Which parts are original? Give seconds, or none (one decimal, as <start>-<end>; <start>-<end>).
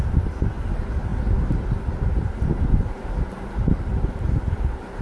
0.0-5.0